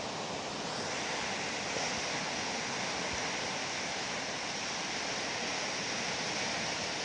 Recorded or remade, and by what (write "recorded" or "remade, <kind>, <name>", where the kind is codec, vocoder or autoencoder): recorded